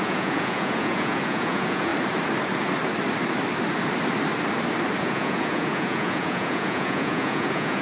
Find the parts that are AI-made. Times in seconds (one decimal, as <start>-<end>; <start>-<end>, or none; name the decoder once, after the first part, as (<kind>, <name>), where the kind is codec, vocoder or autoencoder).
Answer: 0.0-1.9 (vocoder, Vocos); 5.0-7.8